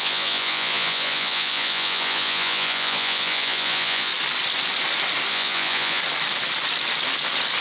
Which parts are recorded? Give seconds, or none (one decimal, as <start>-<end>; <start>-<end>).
4.1-5.3; 6.0-7.6